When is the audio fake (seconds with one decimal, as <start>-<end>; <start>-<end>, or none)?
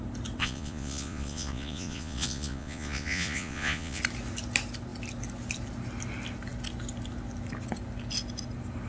0.4-4.0